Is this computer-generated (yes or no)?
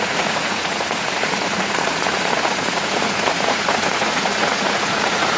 yes